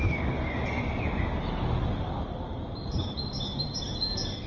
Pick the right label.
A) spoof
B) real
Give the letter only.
B